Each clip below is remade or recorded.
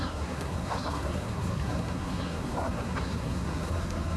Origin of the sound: remade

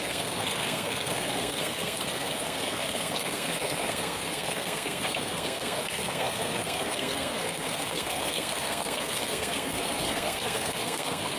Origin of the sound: remade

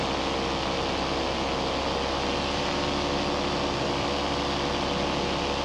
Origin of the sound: recorded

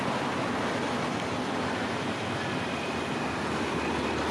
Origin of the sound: recorded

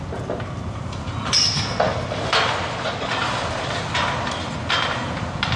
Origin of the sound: recorded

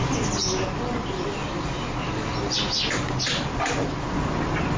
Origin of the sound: recorded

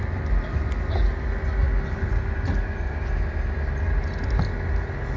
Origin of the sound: recorded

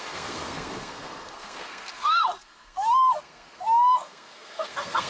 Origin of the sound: remade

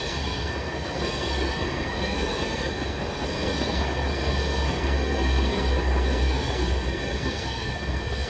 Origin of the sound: remade